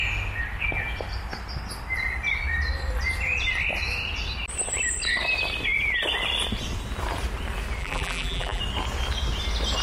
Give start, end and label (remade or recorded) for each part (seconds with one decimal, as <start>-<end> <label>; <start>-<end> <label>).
0.0-7.8 recorded; 7.8-8.6 remade; 8.6-9.8 recorded